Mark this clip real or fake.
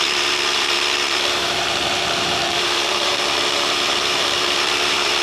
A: fake